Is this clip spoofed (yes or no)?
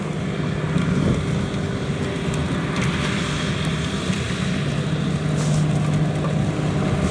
no